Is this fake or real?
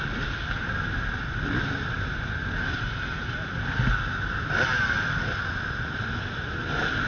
real